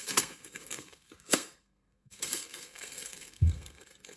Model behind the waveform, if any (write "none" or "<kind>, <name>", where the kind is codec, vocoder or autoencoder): codec, SNAC